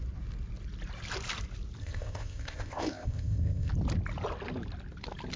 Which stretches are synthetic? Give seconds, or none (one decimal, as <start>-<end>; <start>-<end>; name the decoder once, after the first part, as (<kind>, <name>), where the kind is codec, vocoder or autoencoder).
1.8-3.7 (codec, ZipCodec)